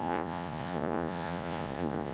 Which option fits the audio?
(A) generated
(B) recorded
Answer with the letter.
A